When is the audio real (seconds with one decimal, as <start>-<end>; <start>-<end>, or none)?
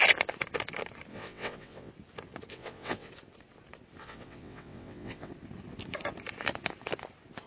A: 0.0-1.1; 1.9-2.5; 3.1-4.0; 5.3-7.5